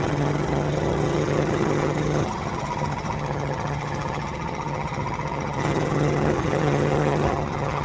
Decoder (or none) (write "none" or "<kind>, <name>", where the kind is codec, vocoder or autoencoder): vocoder, HiFi-GAN